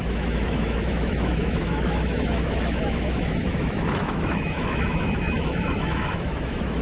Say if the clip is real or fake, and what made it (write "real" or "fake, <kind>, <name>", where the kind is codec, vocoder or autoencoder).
fake, autoencoder, DAC-VAE